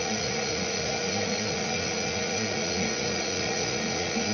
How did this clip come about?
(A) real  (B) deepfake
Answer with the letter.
B